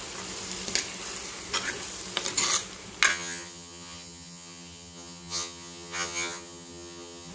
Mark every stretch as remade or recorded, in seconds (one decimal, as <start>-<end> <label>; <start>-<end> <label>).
0.0-3.1 recorded; 3.1-7.3 remade